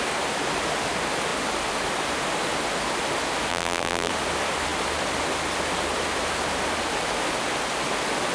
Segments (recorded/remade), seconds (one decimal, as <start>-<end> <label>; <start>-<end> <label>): 0.0-3.5 recorded; 3.5-4.1 remade; 4.1-8.3 recorded